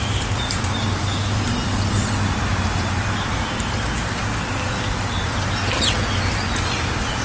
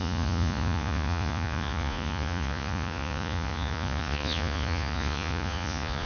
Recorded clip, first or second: first